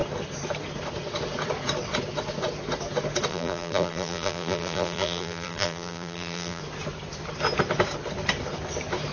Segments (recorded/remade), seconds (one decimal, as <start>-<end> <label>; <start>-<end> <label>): 0.0-3.3 recorded; 3.3-6.6 remade; 6.6-9.1 recorded